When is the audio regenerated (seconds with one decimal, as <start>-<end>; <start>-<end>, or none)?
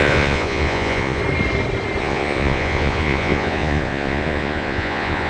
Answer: 0.0-1.2; 2.0-5.3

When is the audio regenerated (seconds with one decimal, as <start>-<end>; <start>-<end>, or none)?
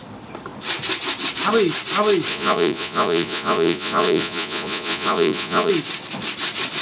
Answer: 2.3-5.7